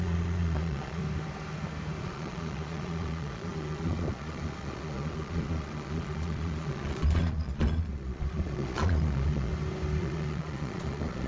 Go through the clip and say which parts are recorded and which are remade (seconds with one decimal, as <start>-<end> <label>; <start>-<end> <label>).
0.0-1.0 remade; 1.0-2.0 recorded; 2.0-9.5 remade; 9.5-10.0 recorded; 10.0-11.3 remade